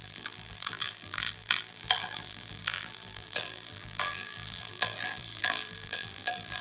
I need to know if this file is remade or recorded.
remade